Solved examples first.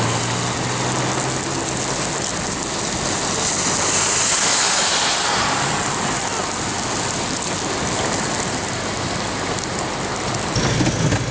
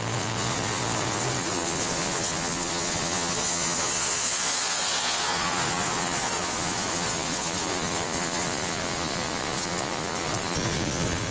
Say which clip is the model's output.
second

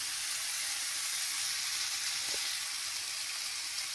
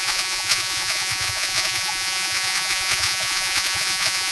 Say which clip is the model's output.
second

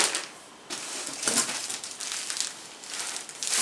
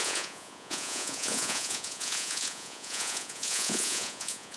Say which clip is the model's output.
second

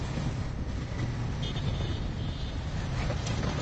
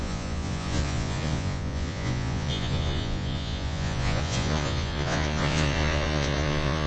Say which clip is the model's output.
second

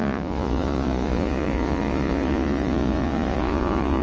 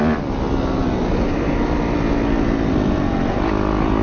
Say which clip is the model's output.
first